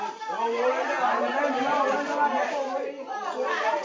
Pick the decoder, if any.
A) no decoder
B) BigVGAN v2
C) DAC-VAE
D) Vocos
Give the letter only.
A